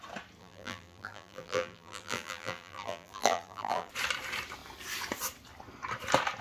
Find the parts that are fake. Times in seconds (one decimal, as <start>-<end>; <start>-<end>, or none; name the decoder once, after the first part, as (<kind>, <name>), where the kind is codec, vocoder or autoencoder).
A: 0.4-3.9 (vocoder, BigVGAN v2)